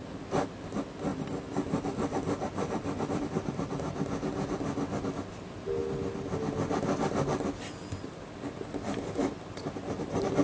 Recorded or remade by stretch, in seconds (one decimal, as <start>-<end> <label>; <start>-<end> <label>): 0.0-10.4 recorded